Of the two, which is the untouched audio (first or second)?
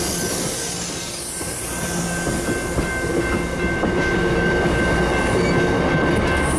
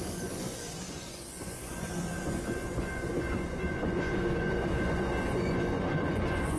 first